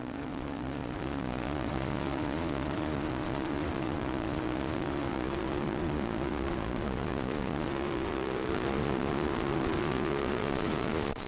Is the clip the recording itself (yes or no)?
no